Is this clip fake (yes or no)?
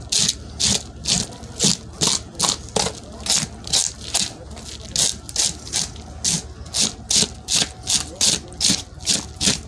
no